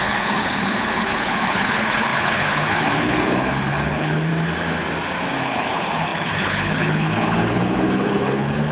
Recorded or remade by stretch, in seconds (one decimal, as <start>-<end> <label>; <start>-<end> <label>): 0.0-4.3 remade; 4.3-5.4 recorded; 5.4-8.7 remade